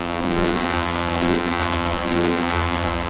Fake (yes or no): yes